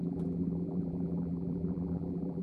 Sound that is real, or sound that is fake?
fake